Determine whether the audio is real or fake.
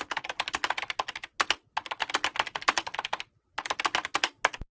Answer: real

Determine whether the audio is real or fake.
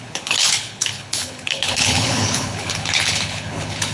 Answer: fake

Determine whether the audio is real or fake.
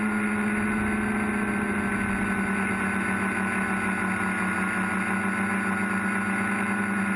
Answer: real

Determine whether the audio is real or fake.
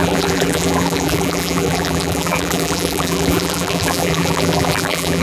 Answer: fake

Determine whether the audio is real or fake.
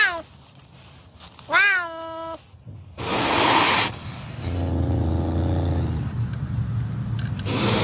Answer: real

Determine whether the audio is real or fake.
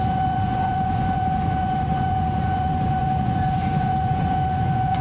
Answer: fake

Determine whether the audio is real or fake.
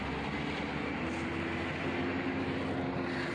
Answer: real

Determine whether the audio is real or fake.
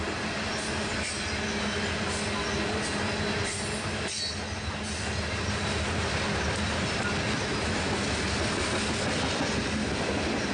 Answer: real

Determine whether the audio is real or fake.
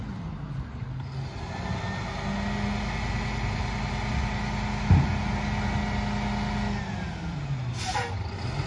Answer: real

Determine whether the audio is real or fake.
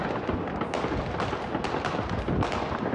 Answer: real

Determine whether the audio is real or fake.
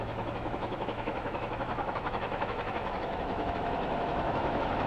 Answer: fake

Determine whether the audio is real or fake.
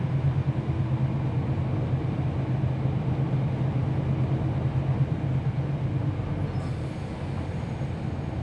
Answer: real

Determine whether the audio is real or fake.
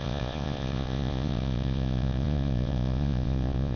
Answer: fake